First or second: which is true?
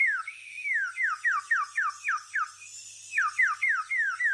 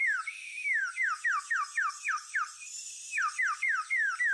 first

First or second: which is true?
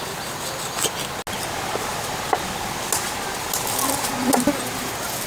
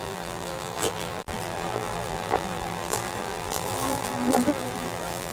first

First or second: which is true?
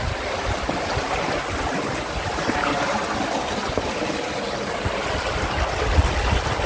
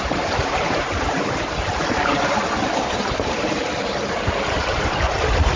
first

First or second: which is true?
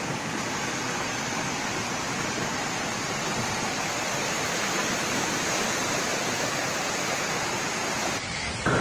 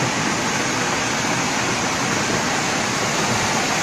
second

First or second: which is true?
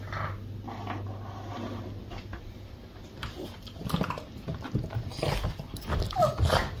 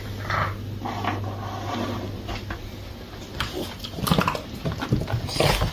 second